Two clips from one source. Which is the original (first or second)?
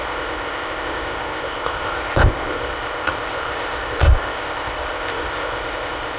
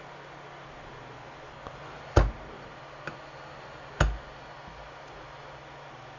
second